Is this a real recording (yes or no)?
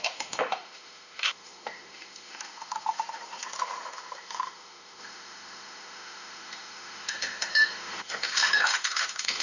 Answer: no